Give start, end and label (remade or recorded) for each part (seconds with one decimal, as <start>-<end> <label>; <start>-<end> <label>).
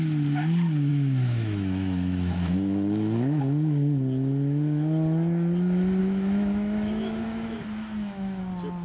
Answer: 0.0-0.9 recorded; 0.9-3.4 remade; 3.4-6.0 recorded; 6.0-8.4 remade; 8.4-8.8 recorded